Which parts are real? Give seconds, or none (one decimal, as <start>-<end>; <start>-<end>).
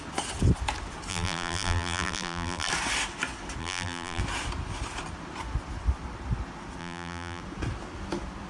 0.0-1.1; 2.7-3.6; 4.2-6.8; 7.4-8.5